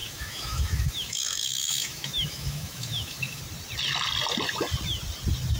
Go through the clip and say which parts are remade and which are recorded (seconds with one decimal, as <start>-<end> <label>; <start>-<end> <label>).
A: 0.0-3.4 remade; 3.4-5.6 recorded